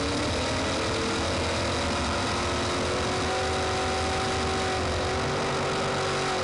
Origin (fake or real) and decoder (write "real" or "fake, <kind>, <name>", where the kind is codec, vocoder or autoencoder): real